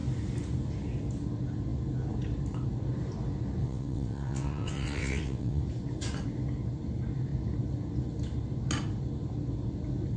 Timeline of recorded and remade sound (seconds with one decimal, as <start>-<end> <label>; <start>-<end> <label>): 0.0-3.6 recorded; 3.6-5.6 remade; 5.6-10.2 recorded